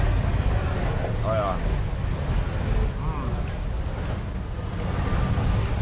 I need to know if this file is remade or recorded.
recorded